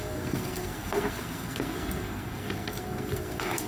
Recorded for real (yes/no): no